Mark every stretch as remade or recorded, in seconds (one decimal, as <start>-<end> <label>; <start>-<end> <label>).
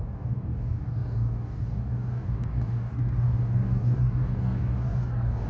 0.0-5.5 remade